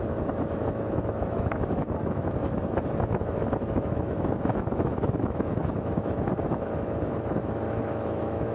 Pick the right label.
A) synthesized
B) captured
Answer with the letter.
A